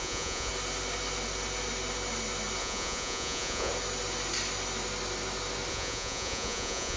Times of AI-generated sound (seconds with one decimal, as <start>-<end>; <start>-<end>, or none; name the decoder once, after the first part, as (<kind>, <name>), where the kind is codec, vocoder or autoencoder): 0.0-0.5 (vocoder, Vocos); 2.6-3.7; 5.7-7.0